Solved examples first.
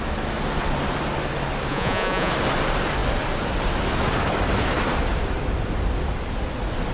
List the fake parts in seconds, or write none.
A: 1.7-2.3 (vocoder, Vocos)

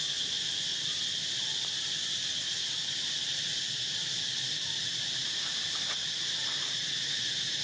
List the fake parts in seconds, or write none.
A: none

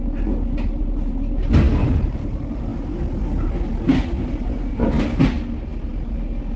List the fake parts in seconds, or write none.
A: 1.8-2.6 (vocoder, BigVGAN v2)

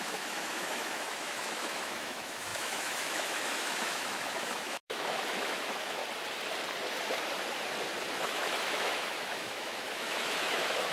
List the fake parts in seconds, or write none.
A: 0.0-6.0 (autoencoder, DAC-VAE); 8.2-10.9